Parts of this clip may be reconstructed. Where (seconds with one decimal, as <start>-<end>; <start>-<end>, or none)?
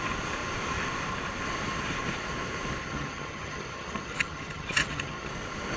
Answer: 2.8-5.3